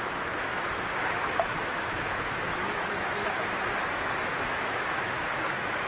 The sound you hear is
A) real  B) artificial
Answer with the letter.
B